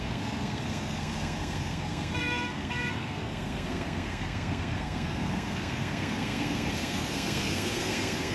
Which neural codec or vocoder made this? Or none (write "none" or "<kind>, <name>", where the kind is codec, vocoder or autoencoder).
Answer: codec, SNAC